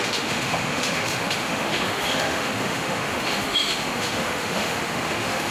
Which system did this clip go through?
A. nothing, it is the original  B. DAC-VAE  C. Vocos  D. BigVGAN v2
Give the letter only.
B